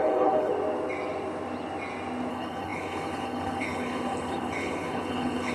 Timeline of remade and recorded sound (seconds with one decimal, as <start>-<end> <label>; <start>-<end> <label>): 0.0-0.5 remade; 0.5-2.3 recorded; 2.3-5.5 remade